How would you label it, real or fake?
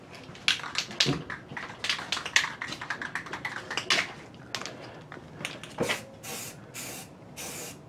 real